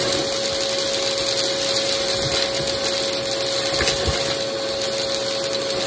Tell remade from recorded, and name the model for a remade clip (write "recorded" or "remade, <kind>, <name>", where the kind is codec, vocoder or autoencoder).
recorded